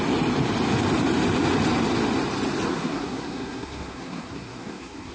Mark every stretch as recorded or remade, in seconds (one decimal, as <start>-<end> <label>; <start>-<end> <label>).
0.0-2.7 recorded; 2.7-5.1 remade